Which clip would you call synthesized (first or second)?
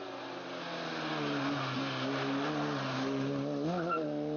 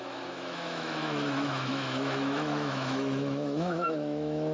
second